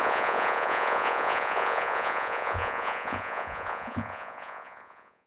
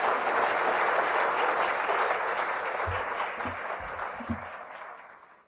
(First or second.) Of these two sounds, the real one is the second